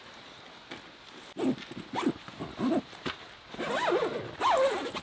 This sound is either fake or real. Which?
real